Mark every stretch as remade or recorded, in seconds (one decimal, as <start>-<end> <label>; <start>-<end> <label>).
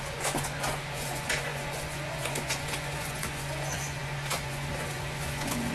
0.0-5.7 remade